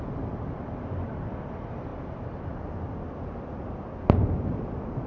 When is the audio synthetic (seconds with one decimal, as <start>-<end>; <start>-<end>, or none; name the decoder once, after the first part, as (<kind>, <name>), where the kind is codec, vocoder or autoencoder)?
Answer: none